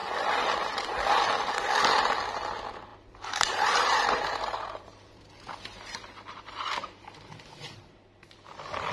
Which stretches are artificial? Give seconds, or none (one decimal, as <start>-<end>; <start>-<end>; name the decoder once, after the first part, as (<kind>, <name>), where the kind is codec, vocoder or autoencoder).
2.9-7.0 (vocoder, BigVGAN v2)